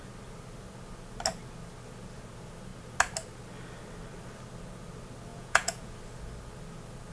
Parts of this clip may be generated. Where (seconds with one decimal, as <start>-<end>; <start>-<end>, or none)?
5.3-5.9